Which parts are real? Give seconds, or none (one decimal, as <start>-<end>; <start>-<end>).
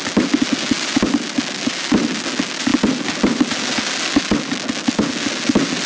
0.0-5.9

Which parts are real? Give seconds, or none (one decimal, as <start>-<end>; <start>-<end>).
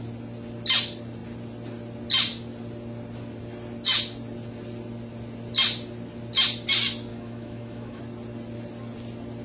0.0-7.1; 8.0-9.4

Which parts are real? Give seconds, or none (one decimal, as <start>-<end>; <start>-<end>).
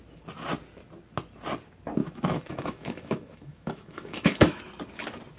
0.0-2.0; 4.6-5.4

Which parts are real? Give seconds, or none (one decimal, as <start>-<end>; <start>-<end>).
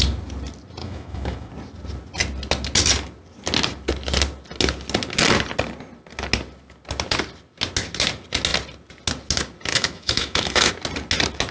0.0-0.8; 1.5-9.7; 10.7-11.5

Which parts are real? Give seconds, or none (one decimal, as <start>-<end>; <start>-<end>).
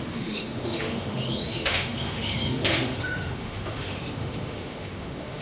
none